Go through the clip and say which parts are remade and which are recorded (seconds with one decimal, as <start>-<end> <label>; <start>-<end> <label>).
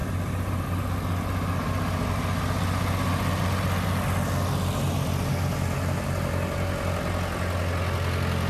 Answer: 0.0-8.5 recorded